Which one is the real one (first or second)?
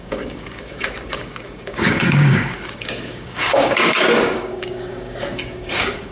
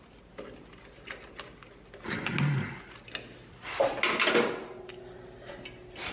second